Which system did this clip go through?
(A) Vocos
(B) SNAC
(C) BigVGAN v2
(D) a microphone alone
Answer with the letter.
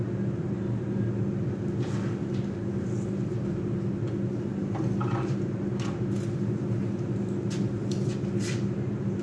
D